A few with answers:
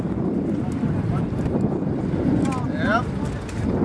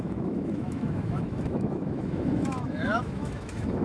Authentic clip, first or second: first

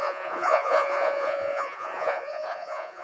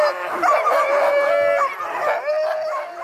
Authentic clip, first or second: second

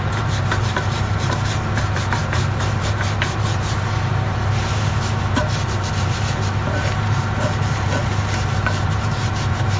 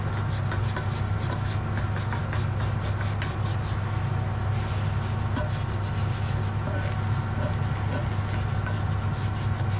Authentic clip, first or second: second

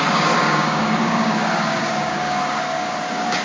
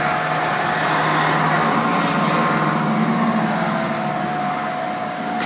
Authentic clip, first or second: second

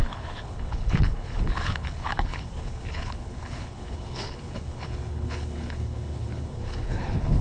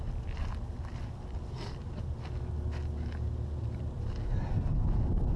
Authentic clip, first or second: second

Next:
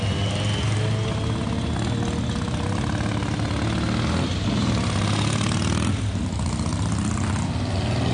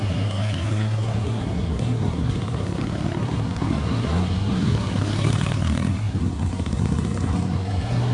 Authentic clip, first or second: first